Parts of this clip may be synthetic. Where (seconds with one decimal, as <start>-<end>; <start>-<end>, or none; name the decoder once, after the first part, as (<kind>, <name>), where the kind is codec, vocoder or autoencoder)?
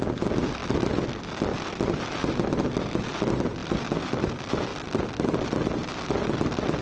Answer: 0.6-2.8 (vocoder, BigVGAN v2); 3.6-4.3